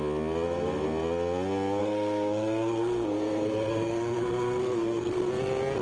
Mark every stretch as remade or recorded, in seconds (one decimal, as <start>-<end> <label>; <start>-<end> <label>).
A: 0.0-1.8 recorded; 1.8-5.2 remade; 5.2-5.8 recorded